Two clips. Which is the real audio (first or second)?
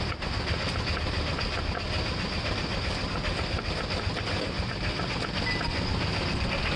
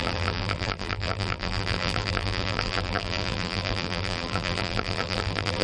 first